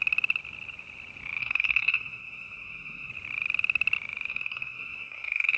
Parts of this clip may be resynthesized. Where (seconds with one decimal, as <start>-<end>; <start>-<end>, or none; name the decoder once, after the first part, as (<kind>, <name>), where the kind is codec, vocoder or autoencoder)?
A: 1.4-3.1 (codec, SNAC); 4.3-5.6